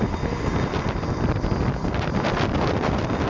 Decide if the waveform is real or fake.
real